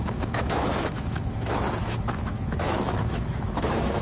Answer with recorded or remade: remade